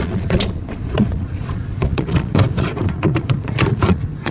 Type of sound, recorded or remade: remade